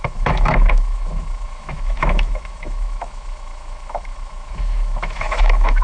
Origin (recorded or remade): remade